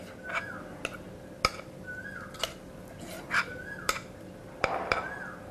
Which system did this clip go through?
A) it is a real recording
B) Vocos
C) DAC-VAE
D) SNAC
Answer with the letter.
A